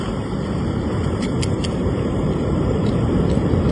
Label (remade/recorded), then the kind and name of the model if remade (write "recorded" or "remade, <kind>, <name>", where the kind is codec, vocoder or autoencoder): remade, vocoder, BigVGAN v2